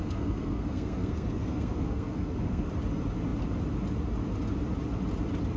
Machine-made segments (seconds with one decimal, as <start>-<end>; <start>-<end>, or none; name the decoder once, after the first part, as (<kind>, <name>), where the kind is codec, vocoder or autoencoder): 0.0-2.7 (codec, SNAC)